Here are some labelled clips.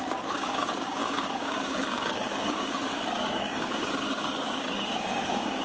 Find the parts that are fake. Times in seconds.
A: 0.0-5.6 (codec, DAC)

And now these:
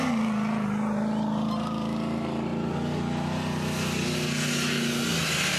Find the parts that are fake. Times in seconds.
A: none

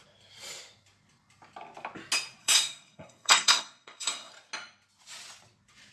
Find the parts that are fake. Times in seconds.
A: 2.4-4.3 (codec, SNAC)

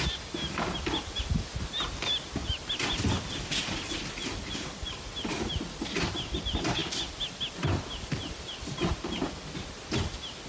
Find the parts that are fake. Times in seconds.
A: none

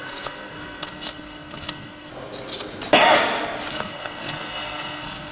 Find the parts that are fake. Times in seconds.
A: 0.0-2.1 (codec, SNAC); 3.7-5.3

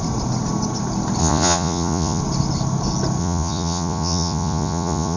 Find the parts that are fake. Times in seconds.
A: 1.2-2.2 (vocoder, Vocos); 3.2-5.2

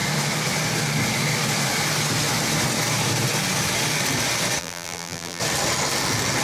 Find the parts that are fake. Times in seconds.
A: 4.6-5.4 (vocoder, BigVGAN v2)